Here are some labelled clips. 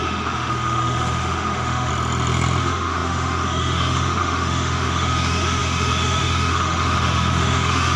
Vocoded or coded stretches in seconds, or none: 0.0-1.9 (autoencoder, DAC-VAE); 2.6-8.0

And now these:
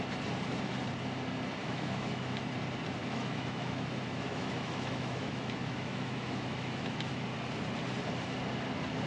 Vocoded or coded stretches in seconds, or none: 1.6-2.4 (autoencoder, DAC-VAE); 3.0-7.1

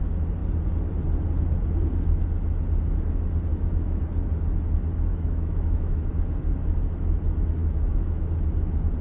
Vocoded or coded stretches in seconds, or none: 3.5-4.0 (autoencoder, DAC-VAE); 5.1-6.1; 7.6-8.3

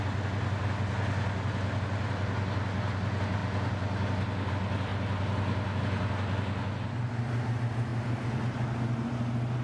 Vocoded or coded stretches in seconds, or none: none

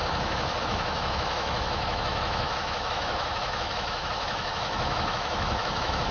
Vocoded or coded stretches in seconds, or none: 0.0-6.1 (autoencoder, DAC-VAE)

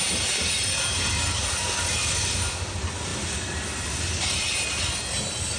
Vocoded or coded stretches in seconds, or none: none

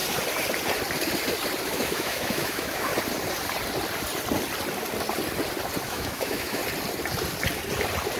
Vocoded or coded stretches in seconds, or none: 1.6-2.9 (autoencoder, DAC-VAE); 5.8-6.6

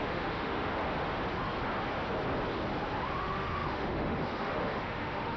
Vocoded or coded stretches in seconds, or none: 0.0-0.8 (autoencoder, DAC-VAE); 3.2-5.4